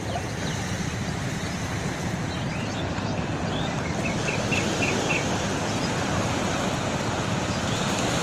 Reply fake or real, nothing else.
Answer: real